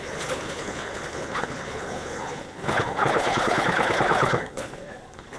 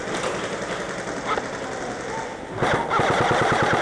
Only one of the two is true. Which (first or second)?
second